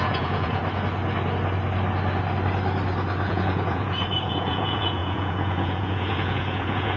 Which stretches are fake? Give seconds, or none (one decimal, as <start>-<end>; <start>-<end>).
0.0-0.6; 3.3-7.0